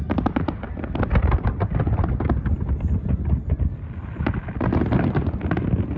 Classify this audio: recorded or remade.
remade